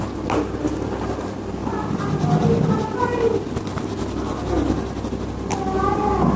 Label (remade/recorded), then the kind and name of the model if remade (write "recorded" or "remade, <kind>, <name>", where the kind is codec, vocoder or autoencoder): recorded